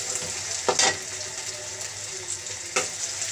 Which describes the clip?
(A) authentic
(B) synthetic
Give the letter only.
A